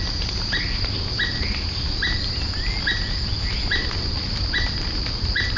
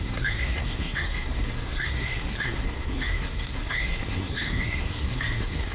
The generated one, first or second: second